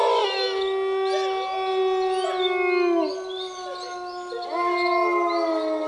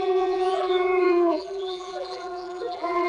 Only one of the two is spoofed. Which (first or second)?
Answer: second